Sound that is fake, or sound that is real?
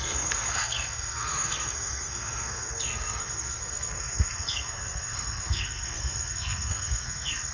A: fake